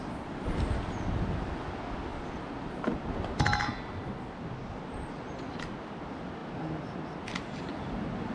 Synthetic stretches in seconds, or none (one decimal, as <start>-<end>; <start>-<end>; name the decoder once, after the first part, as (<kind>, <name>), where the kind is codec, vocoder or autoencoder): none